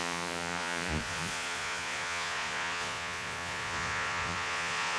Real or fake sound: fake